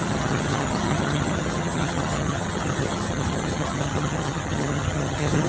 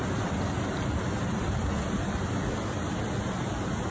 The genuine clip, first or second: second